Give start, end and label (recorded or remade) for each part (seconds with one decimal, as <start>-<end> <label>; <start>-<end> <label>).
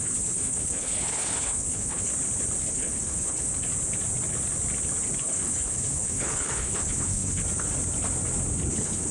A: 0.0-2.1 remade; 2.1-2.6 recorded; 2.6-3.5 remade; 3.5-5.2 recorded; 5.2-7.4 remade; 7.4-8.7 recorded; 8.7-9.1 remade